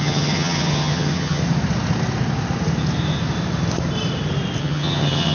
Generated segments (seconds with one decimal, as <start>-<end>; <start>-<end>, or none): 0.0-1.4; 4.6-5.3